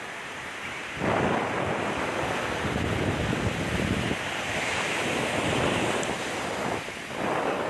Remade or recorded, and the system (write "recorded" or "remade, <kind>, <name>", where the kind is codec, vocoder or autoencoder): recorded